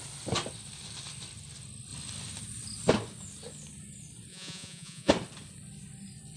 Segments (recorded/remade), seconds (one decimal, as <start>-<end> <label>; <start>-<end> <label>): 0.0-4.3 recorded; 4.3-5.1 remade; 5.1-6.4 recorded